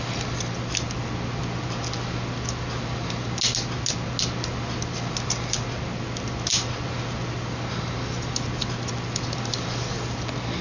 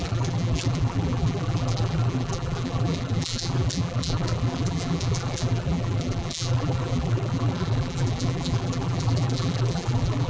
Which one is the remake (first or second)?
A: second